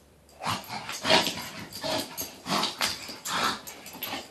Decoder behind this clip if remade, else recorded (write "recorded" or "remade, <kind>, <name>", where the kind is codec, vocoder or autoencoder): recorded